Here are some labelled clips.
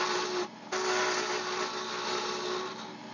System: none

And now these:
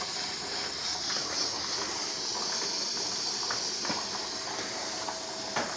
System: none